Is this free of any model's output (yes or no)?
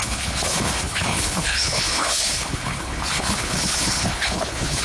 no